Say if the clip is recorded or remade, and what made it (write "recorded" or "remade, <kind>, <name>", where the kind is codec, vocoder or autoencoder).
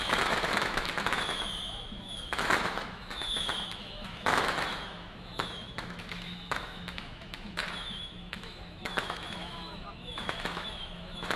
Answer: remade, autoencoder, DAC-VAE